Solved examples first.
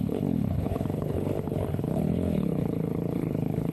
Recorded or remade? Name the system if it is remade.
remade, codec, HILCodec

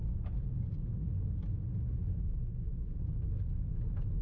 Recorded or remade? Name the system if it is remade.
recorded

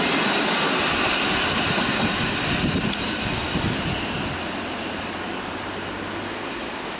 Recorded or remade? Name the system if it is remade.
recorded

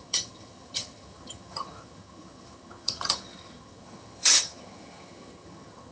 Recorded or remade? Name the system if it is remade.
remade, vocoder, HiFi-GAN